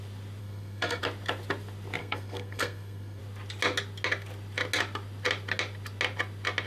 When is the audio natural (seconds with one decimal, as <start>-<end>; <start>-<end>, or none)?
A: 0.0-0.4; 1.0-2.0; 3.2-6.7